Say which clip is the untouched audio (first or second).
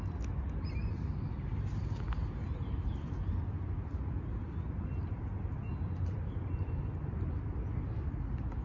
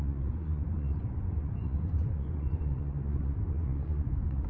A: first